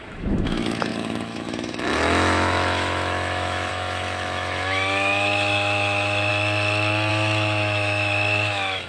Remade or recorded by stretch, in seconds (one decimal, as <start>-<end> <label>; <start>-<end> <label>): 0.0-6.3 remade; 6.3-7.1 recorded; 7.1-8.9 remade